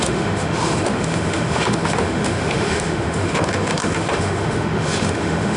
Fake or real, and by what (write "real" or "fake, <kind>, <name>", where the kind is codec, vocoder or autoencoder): fake, autoencoder, DAC-VAE